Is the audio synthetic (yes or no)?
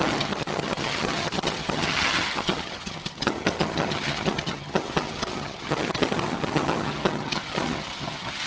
yes